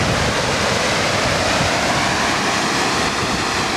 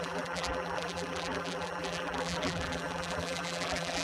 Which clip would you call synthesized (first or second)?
second